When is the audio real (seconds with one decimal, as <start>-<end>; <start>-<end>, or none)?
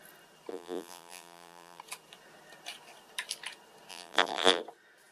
0.0-0.5; 1.8-3.9; 4.6-5.1